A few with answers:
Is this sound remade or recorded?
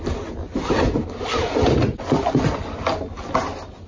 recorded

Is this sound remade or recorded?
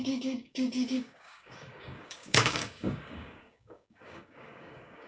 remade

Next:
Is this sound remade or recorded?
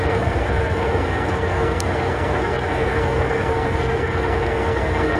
remade